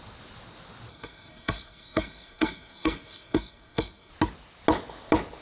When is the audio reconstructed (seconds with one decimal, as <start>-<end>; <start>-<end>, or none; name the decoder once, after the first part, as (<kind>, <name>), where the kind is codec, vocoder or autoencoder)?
0.9-4.1 (codec, SNAC)

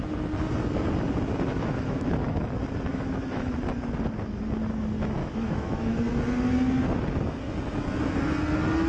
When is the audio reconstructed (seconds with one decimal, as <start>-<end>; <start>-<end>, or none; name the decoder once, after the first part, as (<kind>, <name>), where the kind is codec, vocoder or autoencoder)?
1.5-2.5 (autoencoder, DAC-VAE); 2.9-3.5; 5.2-6.0

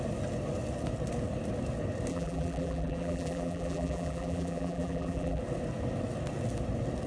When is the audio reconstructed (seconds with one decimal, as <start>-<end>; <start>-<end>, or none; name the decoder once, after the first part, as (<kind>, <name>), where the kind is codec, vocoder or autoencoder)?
2.1-5.4 (vocoder, BigVGAN v2)

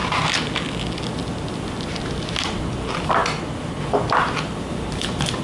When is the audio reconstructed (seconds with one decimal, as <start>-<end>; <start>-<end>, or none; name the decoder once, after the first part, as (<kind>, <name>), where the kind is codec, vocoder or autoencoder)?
1.2-2.4 (vocoder, BigVGAN v2)

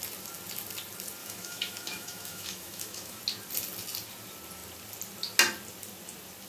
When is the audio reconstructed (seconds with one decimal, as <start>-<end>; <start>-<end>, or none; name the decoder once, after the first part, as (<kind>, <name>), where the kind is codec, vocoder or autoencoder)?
1.2-3.2 (autoencoder, DAC-VAE)

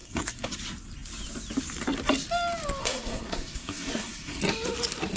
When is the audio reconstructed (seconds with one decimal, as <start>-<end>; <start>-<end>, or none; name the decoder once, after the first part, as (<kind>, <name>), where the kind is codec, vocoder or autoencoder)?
0.0-0.5 (codec, SNAC); 2.8-4.4

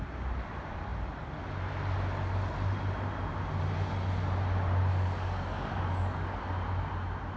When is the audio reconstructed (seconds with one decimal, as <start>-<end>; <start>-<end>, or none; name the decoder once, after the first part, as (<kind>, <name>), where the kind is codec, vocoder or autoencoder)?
4.9-6.5 (codec, DAC)

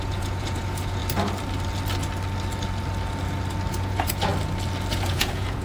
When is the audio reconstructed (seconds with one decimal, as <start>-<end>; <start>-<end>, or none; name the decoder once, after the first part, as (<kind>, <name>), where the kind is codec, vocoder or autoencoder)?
0.0-1.0 (vocoder, Vocos); 3.7-4.3; 4.9-5.6